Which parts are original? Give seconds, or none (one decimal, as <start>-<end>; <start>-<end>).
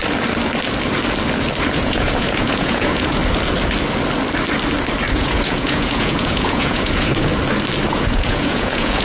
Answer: 0.0-1.7; 3.2-5.1; 7.3-7.9